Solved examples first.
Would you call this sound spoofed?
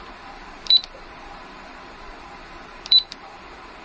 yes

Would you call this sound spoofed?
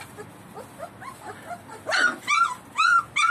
no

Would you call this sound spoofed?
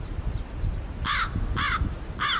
no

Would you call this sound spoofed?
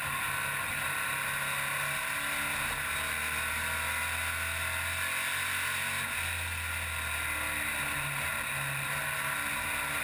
no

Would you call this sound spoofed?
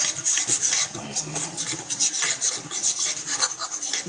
no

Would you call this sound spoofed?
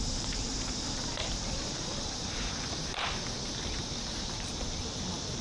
yes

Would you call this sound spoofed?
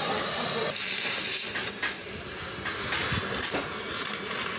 no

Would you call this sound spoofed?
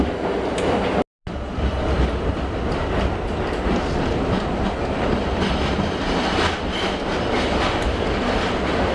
no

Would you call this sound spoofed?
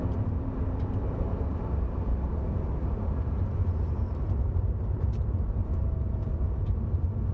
yes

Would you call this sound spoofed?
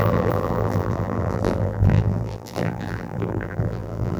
yes